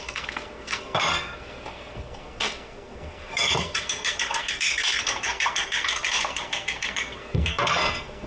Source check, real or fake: fake